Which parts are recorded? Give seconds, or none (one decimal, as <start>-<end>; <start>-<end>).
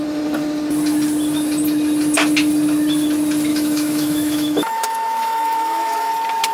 0.0-3.5; 6.1-6.5